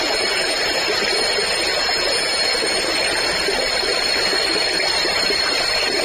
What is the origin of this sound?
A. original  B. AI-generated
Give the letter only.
A